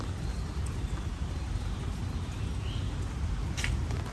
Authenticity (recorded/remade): recorded